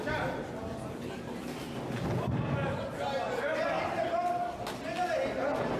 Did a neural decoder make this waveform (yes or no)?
no